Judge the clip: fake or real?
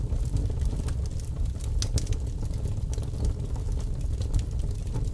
real